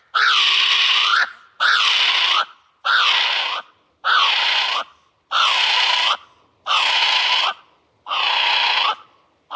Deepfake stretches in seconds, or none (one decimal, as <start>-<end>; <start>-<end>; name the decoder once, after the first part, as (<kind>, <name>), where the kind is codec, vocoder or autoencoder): none